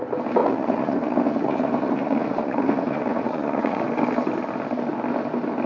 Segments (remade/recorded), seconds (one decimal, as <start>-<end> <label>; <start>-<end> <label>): 0.0-0.4 recorded; 0.4-3.8 remade; 3.8-5.7 recorded